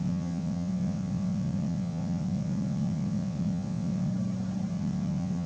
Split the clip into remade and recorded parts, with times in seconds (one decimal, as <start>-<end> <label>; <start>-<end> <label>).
0.0-4.1 remade; 4.1-4.7 recorded; 4.7-5.5 remade